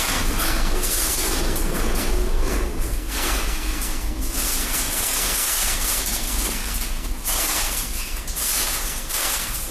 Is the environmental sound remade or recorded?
remade